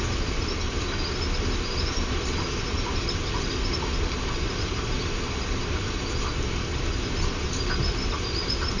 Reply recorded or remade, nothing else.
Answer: recorded